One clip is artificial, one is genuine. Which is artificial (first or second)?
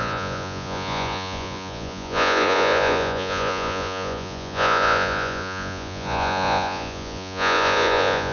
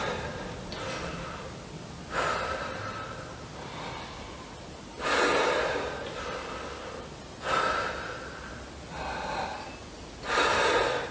first